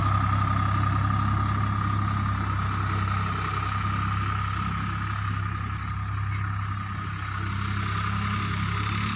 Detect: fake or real real